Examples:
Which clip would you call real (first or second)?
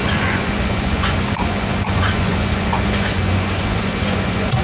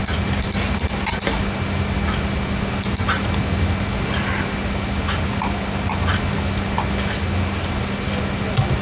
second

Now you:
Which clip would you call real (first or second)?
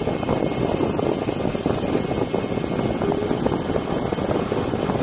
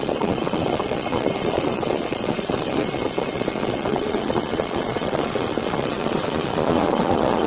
first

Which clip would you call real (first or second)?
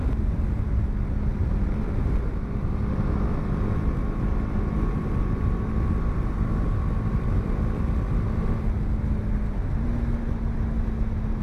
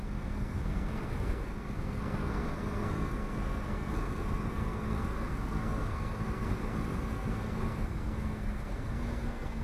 first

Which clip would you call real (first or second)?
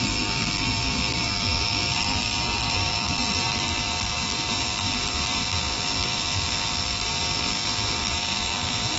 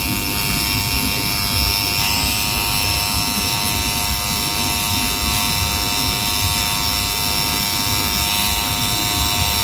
second